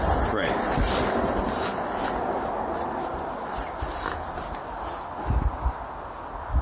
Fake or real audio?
real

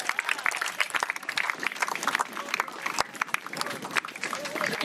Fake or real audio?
real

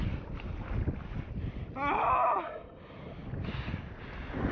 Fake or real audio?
real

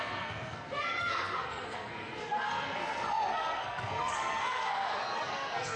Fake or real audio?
fake